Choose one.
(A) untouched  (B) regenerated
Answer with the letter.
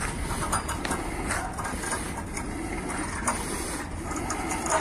A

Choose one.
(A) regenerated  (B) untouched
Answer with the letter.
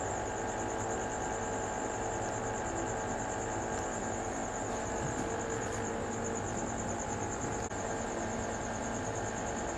B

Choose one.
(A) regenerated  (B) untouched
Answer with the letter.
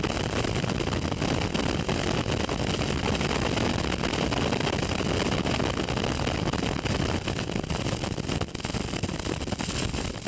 B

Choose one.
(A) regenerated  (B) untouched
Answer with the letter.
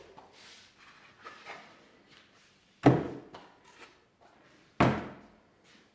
B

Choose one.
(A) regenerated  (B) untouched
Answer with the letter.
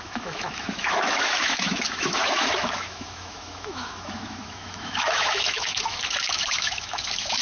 A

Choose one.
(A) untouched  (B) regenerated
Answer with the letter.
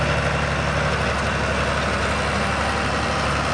A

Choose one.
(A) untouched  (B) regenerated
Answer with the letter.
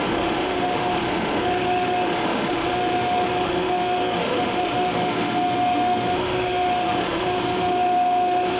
B